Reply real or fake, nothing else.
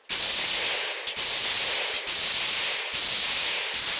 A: real